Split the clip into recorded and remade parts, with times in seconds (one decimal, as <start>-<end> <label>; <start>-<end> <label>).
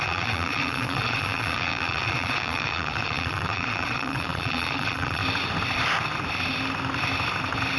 0.0-5.2 remade; 5.2-7.8 recorded